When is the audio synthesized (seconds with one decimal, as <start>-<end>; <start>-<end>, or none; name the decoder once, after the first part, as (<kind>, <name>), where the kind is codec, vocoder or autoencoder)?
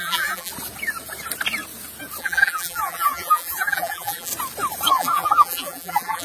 0.0-0.5 (vocoder, BigVGAN v2); 2.2-4.3; 4.9-6.2